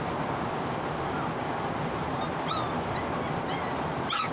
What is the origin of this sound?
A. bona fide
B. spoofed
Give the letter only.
A